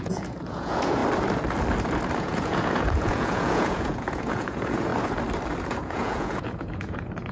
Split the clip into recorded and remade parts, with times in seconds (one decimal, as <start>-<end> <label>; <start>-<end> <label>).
0.0-1.0 remade; 1.0-2.2 recorded; 2.2-4.9 remade; 4.9-5.6 recorded; 5.6-7.3 remade